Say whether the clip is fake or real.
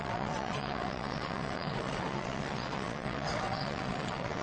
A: fake